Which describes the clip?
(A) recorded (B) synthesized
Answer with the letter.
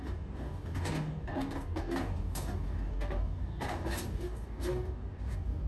B